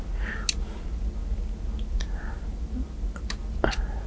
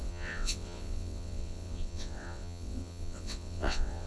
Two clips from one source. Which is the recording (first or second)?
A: first